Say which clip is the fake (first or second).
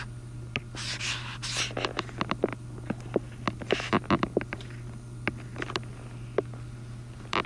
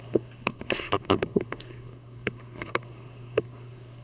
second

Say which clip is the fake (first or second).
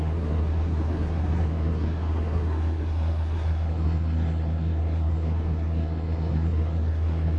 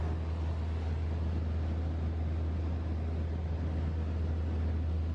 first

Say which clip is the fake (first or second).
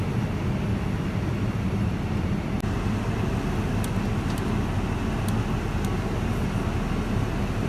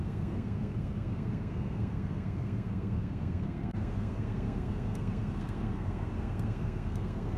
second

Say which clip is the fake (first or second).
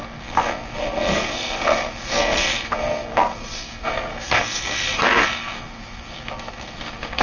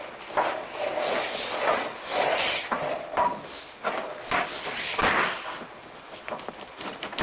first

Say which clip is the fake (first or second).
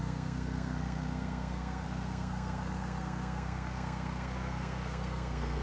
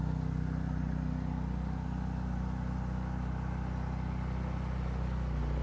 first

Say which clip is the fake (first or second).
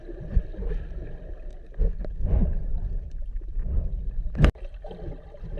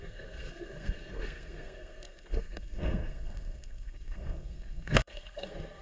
second